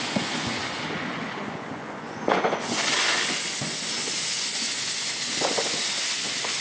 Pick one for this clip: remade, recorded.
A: remade